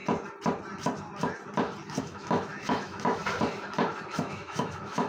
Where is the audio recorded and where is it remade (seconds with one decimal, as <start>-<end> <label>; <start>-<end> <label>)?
0.0-2.0 recorded; 2.0-3.2 remade; 3.2-4.1 recorded; 4.1-5.1 remade